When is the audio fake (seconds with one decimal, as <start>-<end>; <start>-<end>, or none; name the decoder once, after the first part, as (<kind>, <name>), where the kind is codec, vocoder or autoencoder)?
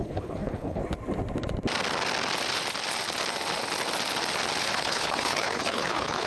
0.0-0.8 (codec, HILCodec); 4.6-6.3